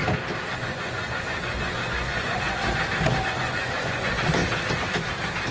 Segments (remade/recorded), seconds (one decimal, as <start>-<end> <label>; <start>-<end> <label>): 0.0-0.5 recorded; 0.5-2.6 remade; 2.6-3.3 recorded; 3.3-4.4 remade; 4.4-5.5 recorded